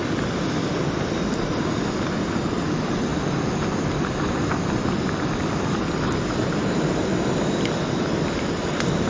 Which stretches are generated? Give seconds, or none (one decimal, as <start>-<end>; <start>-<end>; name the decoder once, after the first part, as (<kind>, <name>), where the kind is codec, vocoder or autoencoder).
none